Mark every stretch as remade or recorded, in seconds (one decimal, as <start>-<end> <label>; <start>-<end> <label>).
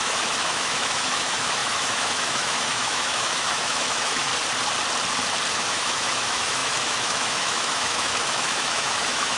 0.0-4.3 remade; 4.3-5.5 recorded; 5.5-9.4 remade